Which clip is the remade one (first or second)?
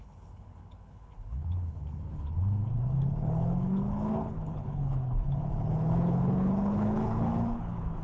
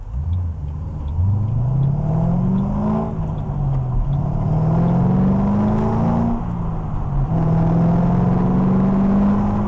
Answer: first